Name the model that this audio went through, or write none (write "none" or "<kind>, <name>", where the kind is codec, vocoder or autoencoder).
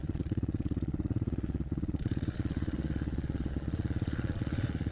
vocoder, Vocos